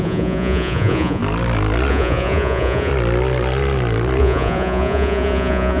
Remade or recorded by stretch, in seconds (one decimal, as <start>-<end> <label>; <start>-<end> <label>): 0.0-1.2 remade; 1.2-1.9 recorded; 1.9-2.9 remade; 2.9-4.2 recorded; 4.2-5.8 remade